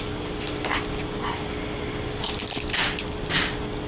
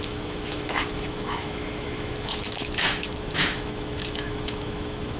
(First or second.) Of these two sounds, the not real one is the second